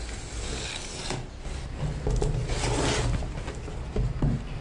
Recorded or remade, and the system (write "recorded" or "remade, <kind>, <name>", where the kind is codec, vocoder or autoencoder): recorded